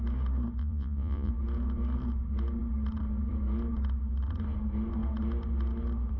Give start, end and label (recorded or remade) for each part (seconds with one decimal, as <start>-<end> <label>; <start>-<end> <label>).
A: 0.0-0.6 recorded; 0.6-1.3 remade; 1.3-6.2 recorded